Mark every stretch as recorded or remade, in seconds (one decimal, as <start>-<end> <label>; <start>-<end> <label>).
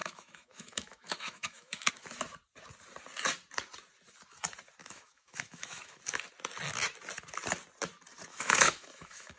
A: 0.0-1.9 remade; 1.9-4.8 recorded; 4.8-6.0 remade; 6.0-8.3 recorded; 8.3-9.4 remade